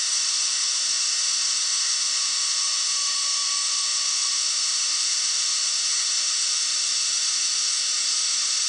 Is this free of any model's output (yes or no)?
no